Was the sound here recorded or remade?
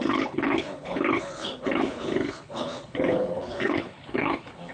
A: remade